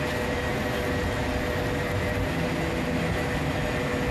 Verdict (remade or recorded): recorded